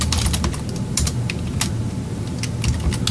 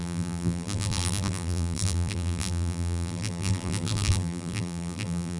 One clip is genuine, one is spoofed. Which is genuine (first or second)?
first